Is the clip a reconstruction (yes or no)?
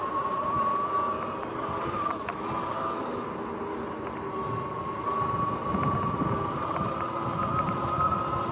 no